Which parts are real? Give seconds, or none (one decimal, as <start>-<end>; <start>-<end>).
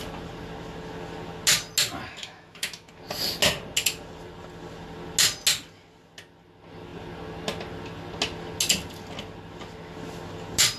0.0-2.2; 2.9-10.8